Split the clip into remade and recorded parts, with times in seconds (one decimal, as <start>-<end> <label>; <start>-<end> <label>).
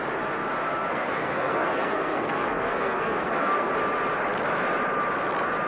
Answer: 0.0-0.9 recorded; 0.9-3.7 remade; 3.7-5.7 recorded